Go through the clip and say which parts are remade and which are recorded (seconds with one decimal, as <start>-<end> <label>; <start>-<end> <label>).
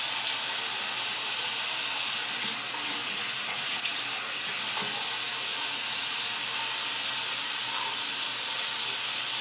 0.0-3.0 recorded; 3.0-4.0 remade; 4.0-5.5 recorded; 5.5-6.2 remade; 6.2-9.4 recorded